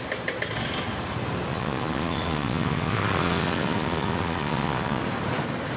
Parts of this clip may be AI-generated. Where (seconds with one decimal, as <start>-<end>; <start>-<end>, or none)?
1.5-5.0